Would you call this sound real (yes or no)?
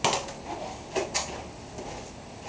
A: yes